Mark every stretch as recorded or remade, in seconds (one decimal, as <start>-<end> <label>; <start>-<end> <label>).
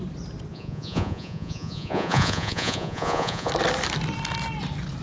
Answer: 0.0-0.5 recorded; 0.5-3.5 remade; 3.5-5.0 recorded